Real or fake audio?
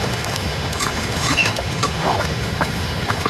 fake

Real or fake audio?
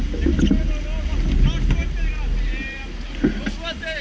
real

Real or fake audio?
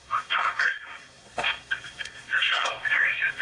fake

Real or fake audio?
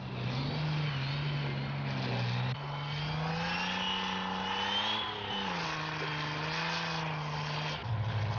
real